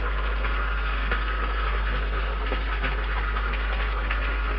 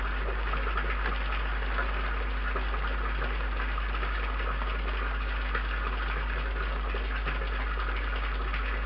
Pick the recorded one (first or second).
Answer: second